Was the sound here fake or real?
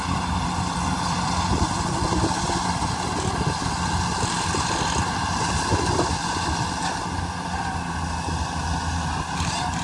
real